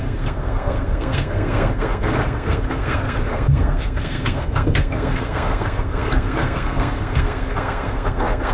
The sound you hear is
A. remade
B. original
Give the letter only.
A